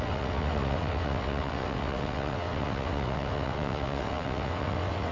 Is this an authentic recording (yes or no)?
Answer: no